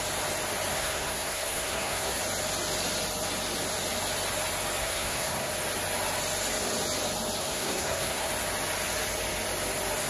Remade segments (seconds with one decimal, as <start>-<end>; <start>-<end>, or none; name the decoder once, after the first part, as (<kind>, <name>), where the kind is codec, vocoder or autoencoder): 0.7-2.2 (codec, SNAC); 4.8-5.5; 7.4-8.3